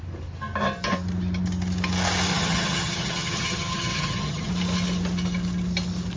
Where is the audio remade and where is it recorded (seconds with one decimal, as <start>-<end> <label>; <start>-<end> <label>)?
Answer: 0.0-2.3 recorded; 2.3-4.5 remade; 4.5-6.2 recorded